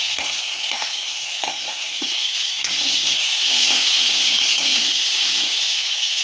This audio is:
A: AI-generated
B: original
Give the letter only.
A